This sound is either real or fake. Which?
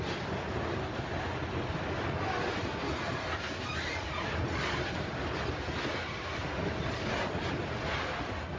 real